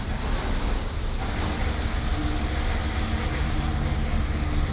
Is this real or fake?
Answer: real